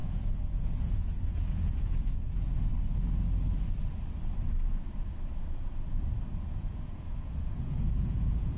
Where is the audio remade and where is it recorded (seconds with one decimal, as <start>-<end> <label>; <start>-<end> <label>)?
0.0-2.7 remade; 2.7-6.5 recorded; 6.5-8.6 remade